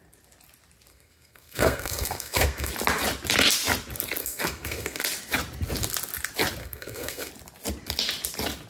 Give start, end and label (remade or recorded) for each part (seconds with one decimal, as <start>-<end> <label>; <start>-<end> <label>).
0.0-0.9 recorded; 0.9-2.7 remade; 2.7-4.2 recorded; 4.2-5.0 remade; 5.0-6.6 recorded; 6.6-7.3 remade; 7.3-8.7 recorded